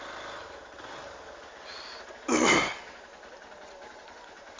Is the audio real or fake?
real